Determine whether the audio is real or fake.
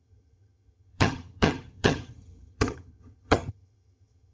fake